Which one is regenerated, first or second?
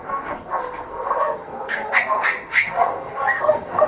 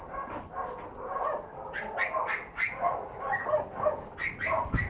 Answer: first